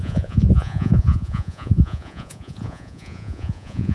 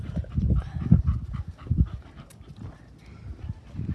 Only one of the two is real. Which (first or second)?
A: second